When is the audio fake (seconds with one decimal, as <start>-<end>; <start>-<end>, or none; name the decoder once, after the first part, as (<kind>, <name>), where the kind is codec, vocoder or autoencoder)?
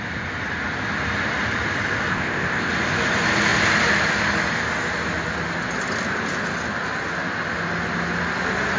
2.1-2.7 (codec, ZipCodec)